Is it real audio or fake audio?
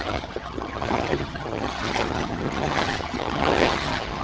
fake